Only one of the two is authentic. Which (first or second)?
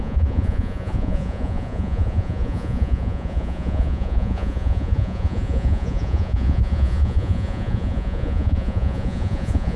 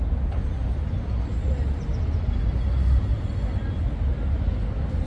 second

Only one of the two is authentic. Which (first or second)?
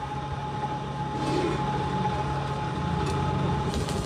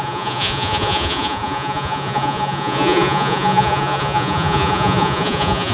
first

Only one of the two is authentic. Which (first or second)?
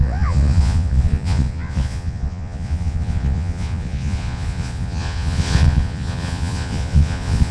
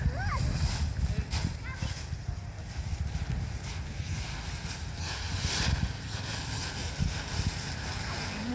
second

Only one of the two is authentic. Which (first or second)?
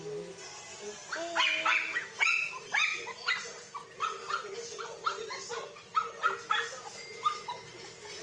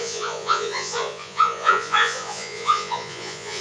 first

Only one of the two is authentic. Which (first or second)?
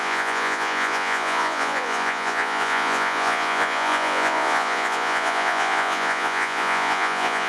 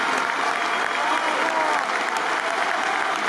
second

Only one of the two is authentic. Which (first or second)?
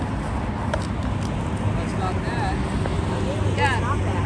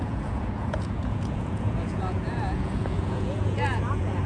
first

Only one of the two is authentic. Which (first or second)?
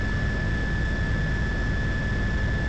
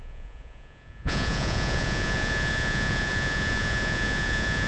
first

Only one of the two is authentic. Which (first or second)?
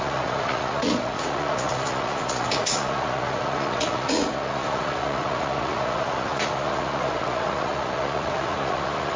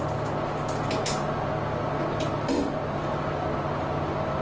second